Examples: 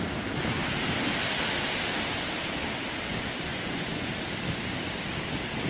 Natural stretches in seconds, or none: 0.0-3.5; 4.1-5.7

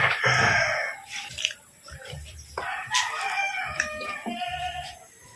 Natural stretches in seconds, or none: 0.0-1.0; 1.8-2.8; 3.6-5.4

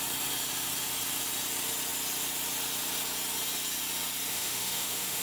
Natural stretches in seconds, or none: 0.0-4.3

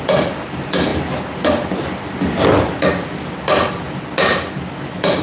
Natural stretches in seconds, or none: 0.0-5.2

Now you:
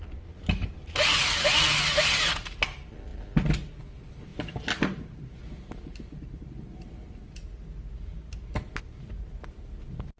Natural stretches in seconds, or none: 0.0-10.2